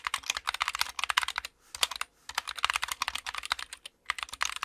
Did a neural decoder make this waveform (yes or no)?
no